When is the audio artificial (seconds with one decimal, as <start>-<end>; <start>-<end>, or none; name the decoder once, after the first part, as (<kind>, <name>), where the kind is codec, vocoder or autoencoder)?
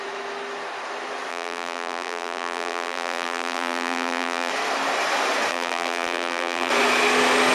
1.3-4.5 (vocoder, BigVGAN v2); 5.5-6.7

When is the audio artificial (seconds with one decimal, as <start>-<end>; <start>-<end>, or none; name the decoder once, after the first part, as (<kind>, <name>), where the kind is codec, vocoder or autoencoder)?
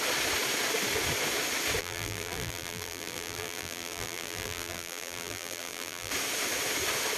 1.8-6.1 (vocoder, BigVGAN v2)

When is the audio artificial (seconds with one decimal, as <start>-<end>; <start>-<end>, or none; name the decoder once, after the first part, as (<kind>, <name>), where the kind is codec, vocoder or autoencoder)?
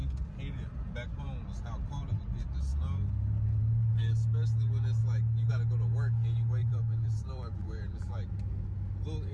6.6-8.3 (vocoder, BigVGAN v2)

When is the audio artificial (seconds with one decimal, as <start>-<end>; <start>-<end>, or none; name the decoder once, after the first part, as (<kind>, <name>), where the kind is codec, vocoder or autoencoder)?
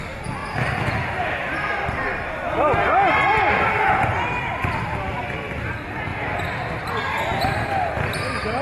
0.4-3.8 (vocoder, BigVGAN v2)